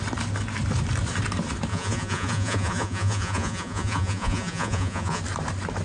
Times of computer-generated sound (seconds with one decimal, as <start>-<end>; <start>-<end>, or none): 1.7-5.2